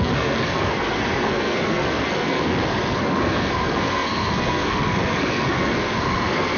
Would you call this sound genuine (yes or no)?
no